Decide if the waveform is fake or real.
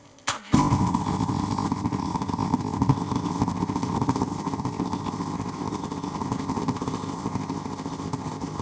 fake